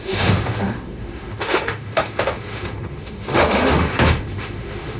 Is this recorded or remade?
remade